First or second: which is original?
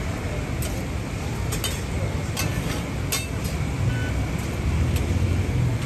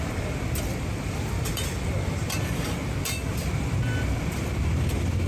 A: first